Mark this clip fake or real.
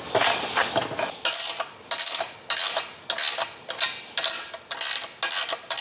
real